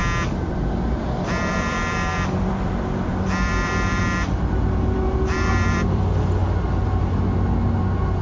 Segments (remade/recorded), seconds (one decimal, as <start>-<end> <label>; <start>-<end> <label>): 0.0-0.5 recorded; 0.5-6.4 remade; 6.4-8.2 recorded